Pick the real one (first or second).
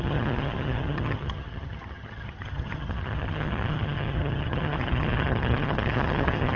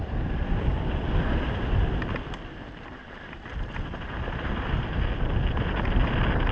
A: second